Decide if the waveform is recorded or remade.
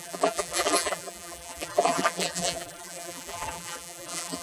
remade